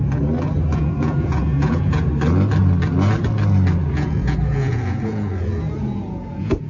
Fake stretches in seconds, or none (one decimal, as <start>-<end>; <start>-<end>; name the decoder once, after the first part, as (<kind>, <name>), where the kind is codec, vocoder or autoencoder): 0.7-2.1 (vocoder, Vocos); 3.8-6.7